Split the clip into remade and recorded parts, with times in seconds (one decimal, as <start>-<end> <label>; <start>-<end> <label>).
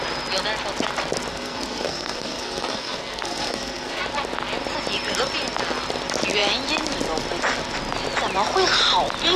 0.0-1.3 recorded; 1.3-4.0 remade; 4.0-9.4 recorded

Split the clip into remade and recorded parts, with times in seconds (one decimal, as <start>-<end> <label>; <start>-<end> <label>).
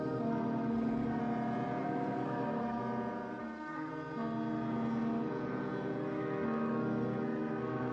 0.0-1.2 remade; 1.2-1.8 recorded; 1.8-2.8 remade; 2.8-3.4 recorded; 3.4-3.9 remade; 3.9-6.0 recorded; 6.0-7.9 remade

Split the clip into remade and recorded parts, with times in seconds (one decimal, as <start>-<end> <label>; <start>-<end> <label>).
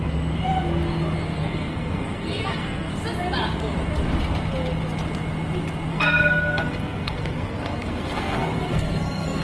0.0-1.4 recorded; 1.4-2.9 remade; 2.9-5.9 recorded; 5.9-9.4 remade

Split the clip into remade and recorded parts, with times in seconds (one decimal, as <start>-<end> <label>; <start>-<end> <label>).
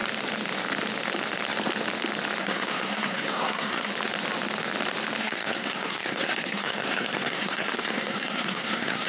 0.0-2.4 recorded; 2.4-3.9 remade; 3.9-5.2 recorded; 5.2-9.1 remade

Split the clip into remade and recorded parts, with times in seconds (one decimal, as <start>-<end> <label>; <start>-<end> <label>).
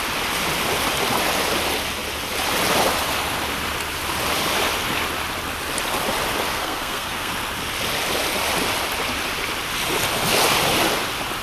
0.0-6.5 recorded; 6.5-7.3 remade; 7.3-11.4 recorded